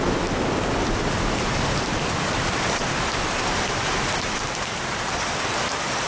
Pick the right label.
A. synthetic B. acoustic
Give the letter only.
B